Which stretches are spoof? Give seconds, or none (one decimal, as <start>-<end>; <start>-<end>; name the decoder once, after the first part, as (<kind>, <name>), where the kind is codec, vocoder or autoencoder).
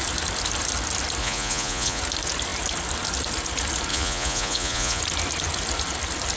1.2-2.0 (vocoder, Vocos); 3.9-5.0